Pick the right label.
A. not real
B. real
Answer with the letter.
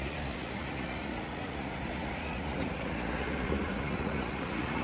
A